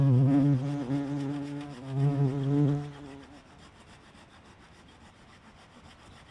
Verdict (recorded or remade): recorded